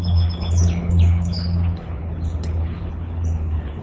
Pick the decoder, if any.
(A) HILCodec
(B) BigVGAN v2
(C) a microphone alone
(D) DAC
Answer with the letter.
A